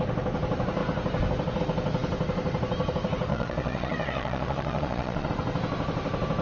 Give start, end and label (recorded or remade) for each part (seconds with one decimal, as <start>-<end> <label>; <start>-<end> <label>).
0.0-3.3 recorded; 3.3-5.3 remade; 5.3-6.4 recorded